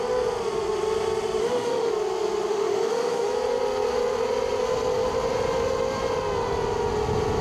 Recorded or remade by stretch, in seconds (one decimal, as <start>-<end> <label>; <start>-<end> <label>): 0.0-1.4 recorded; 1.4-1.9 remade; 1.9-2.5 recorded; 2.5-3.3 remade; 3.3-7.4 recorded